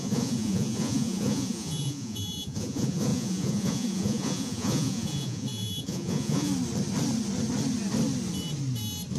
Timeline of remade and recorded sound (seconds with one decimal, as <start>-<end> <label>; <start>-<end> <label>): 0.0-6.5 remade; 6.5-9.2 recorded